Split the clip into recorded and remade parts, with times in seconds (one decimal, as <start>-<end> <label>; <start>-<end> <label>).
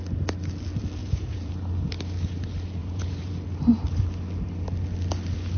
0.0-1.0 recorded; 1.0-1.5 remade; 1.5-2.8 recorded; 2.8-3.3 remade; 3.3-5.6 recorded